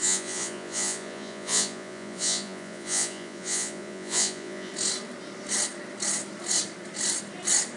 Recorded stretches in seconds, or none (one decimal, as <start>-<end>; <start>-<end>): 4.7-7.8